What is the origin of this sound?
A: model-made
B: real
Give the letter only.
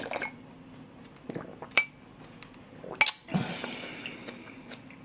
B